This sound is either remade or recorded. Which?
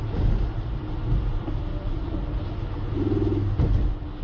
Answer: recorded